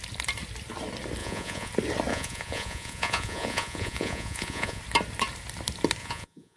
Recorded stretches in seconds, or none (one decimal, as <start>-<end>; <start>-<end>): 0.0-1.2; 1.7-2.1; 4.8-6.0